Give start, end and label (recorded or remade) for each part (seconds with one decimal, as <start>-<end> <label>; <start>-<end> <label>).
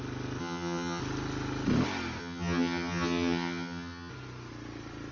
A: 0.0-0.4 recorded; 0.4-1.0 remade; 1.0-2.2 recorded; 2.2-4.1 remade; 4.1-5.1 recorded